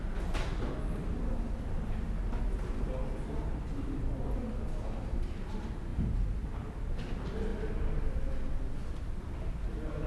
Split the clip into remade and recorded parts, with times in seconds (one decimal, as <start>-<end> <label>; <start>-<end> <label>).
0.0-10.1 recorded